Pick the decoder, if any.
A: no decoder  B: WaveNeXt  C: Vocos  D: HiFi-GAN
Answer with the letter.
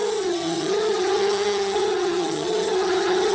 D